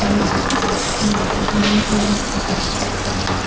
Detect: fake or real real